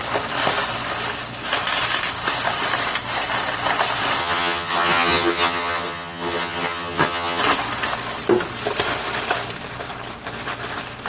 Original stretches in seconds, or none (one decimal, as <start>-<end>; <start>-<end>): 0.0-4.2; 7.4-11.1

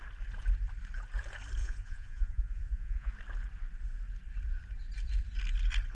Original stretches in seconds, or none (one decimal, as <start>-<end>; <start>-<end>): 0.0-1.6; 3.1-5.9